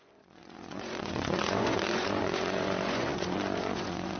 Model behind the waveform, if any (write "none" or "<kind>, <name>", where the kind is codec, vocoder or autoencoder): vocoder, Vocos